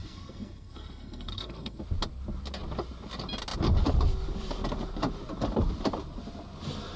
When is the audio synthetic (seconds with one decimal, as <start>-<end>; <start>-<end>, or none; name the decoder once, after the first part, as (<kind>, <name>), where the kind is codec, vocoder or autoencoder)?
0.0-1.8 (codec, SNAC)